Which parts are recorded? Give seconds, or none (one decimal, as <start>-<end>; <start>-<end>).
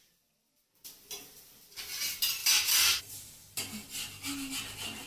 0.0-5.1